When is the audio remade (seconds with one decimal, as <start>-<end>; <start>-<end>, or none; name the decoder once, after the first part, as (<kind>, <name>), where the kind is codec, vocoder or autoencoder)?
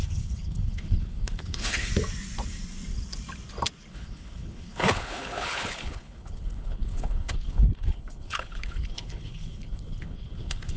0.0-1.9 (codec, HILCodec); 3.9-10.8